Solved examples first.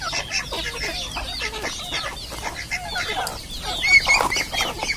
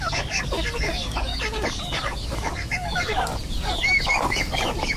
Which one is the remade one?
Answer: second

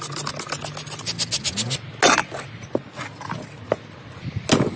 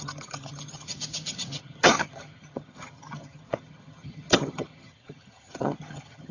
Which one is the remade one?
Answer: second